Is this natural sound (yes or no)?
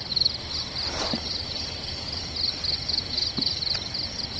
yes